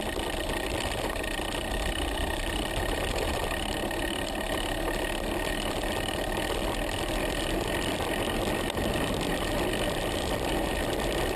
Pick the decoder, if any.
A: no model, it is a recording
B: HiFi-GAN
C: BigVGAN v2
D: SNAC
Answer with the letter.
A